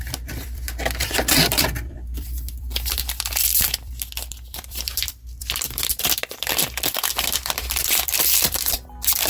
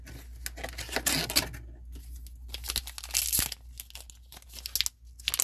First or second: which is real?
second